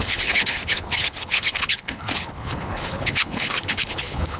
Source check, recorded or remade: remade